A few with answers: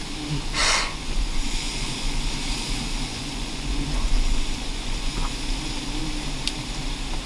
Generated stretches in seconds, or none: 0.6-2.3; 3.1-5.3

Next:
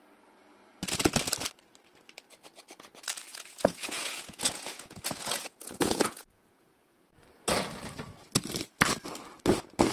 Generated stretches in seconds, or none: 3.3-7.2

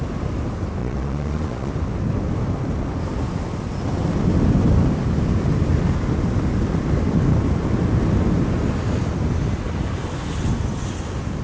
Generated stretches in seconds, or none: 0.8-1.7

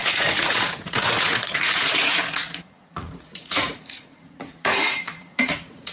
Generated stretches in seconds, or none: 0.0-5.9

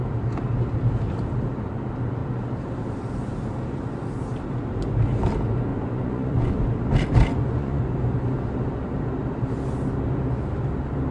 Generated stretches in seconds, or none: 5.7-6.6; 7.3-7.8

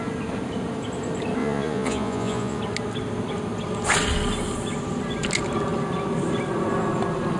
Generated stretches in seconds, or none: 1.4-2.6